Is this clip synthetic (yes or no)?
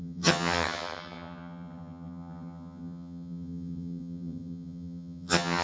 yes